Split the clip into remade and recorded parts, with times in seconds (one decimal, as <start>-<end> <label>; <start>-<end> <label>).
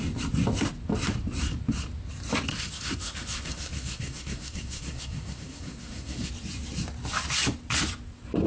0.0-2.5 recorded; 2.5-6.3 remade; 6.3-8.5 recorded